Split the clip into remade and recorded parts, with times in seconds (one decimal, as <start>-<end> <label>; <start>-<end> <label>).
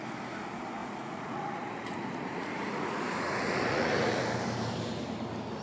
0.0-0.8 recorded; 0.8-4.2 remade; 4.2-5.6 recorded